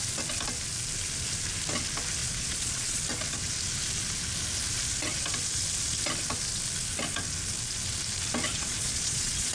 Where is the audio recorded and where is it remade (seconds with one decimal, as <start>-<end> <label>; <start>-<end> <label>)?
0.0-2.2 recorded; 2.2-3.0 remade; 3.0-8.5 recorded; 8.5-9.5 remade